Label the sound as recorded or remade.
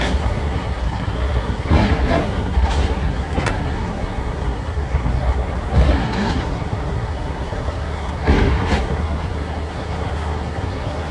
remade